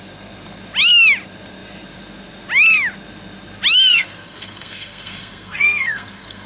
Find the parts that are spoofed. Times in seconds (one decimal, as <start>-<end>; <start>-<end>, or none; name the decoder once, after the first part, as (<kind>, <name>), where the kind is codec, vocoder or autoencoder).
3.9-6.5 (codec, SNAC)

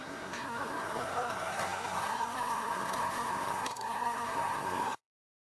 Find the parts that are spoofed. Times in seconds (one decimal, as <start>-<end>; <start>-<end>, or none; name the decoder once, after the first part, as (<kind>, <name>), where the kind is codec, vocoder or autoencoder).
0.0-5.5 (codec, SNAC)

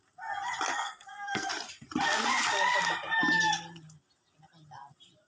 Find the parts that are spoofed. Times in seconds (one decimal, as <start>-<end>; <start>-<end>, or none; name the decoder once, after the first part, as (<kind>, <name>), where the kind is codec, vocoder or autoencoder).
0.7-1.5 (codec, SNAC)

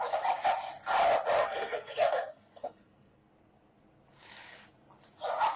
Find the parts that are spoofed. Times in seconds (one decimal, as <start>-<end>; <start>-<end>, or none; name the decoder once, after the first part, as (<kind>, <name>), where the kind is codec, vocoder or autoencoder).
1.4-3.3 (codec, SNAC)

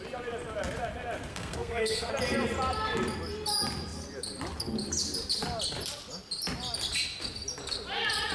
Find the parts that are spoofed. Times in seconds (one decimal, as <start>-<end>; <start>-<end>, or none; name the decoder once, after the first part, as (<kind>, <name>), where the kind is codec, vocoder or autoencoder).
1.3-2.1 (codec, SNAC)

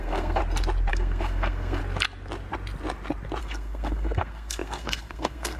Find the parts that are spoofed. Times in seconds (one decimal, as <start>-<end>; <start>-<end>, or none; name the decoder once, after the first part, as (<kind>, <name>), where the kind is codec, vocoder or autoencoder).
0.0-0.4 (codec, SNAC); 0.9-1.8; 3.4-5.6

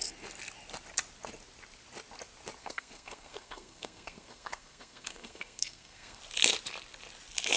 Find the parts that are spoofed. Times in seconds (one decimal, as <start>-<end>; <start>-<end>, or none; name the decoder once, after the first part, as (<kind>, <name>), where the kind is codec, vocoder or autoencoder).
2.6-6.2 (codec, SNAC)